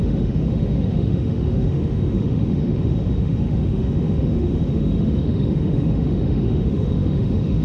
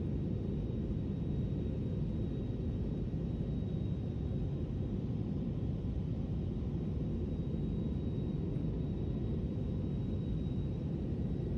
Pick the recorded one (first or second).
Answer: second